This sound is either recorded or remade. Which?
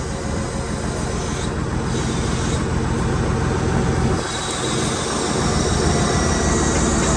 recorded